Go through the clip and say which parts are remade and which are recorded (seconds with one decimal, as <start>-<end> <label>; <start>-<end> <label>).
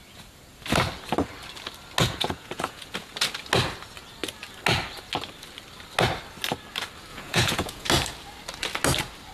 0.0-2.0 recorded; 2.0-3.1 remade; 3.1-7.1 recorded; 7.1-7.9 remade; 7.9-9.3 recorded